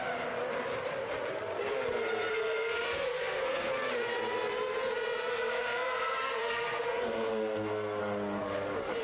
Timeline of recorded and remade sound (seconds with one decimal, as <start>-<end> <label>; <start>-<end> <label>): 0.0-2.3 recorded; 2.3-3.7 remade; 3.7-5.3 recorded; 5.3-8.0 remade; 8.0-9.0 recorded